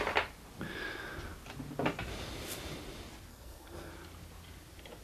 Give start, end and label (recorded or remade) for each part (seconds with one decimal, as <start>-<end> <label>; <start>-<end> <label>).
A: 0.0-3.3 recorded; 3.3-3.9 remade; 3.9-5.0 recorded